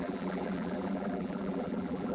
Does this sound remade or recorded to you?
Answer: remade